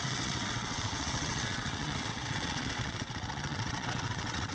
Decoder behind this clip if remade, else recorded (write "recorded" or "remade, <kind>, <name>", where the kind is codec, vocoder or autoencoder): remade, vocoder, WaveNeXt